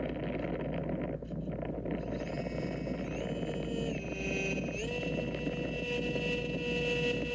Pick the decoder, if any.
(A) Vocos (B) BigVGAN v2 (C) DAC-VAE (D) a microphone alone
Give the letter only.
D